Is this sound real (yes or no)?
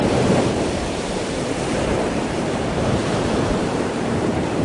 no